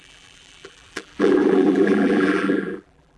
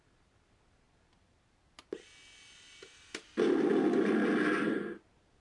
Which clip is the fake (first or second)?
first